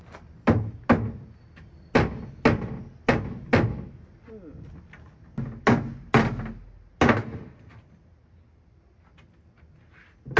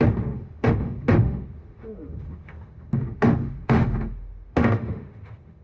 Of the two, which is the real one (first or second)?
first